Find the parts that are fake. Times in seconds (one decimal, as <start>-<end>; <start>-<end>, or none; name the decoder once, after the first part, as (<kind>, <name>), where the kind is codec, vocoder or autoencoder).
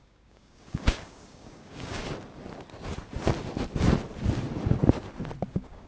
0.0-2.0 (codec, DAC); 5.5-5.9